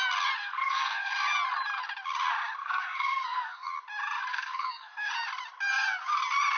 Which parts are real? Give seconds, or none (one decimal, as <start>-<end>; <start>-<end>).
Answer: 0.0-0.4; 1.1-2.6; 3.7-4.3; 5.1-6.6